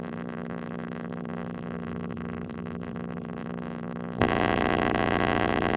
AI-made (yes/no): yes